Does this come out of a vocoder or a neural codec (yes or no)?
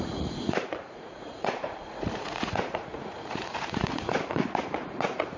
yes